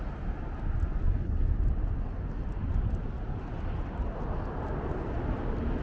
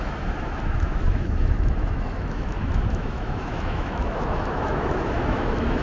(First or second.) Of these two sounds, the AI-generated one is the second